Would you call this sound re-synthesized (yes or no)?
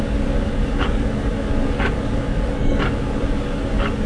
yes